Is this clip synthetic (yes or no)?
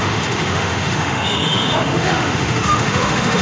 yes